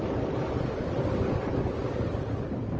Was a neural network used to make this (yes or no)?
no